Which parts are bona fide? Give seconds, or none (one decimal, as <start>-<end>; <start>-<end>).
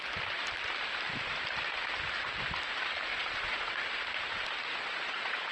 0.0-3.1; 3.7-4.8